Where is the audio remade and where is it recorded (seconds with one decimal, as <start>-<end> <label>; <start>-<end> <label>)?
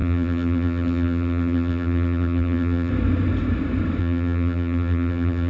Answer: 0.0-2.9 remade; 2.9-4.0 recorded; 4.0-5.5 remade